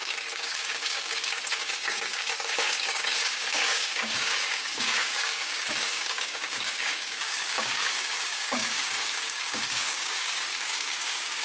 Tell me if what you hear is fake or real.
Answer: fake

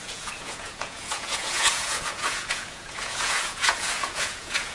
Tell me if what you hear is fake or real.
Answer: fake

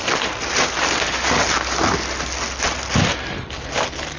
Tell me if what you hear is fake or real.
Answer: real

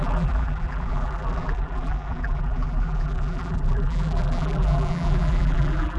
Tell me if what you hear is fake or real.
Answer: fake